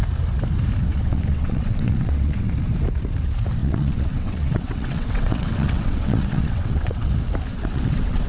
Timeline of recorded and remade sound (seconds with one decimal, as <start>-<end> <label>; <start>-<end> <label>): 0.0-0.9 recorded; 0.9-2.5 remade; 2.5-3.6 recorded; 3.6-7.1 remade; 7.1-7.5 recorded; 7.5-8.3 remade